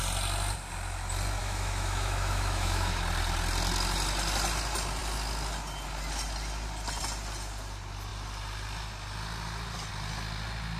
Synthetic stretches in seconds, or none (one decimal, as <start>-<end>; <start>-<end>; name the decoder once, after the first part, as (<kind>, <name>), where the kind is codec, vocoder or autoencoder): 1.4-3.0 (autoencoder, DAC-VAE)